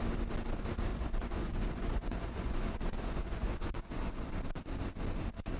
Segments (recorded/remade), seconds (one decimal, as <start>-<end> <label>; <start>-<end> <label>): 0.0-0.9 recorded; 0.9-4.3 remade; 4.3-5.6 recorded